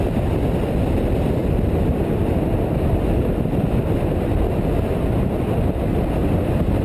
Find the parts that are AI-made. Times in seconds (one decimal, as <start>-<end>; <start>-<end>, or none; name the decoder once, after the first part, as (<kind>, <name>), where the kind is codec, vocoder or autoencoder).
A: none